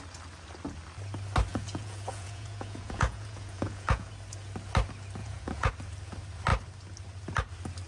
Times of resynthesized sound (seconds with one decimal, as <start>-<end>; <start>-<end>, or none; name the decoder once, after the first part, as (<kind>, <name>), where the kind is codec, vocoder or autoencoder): 1.5-4.1 (vocoder, Vocos); 5.2-5.7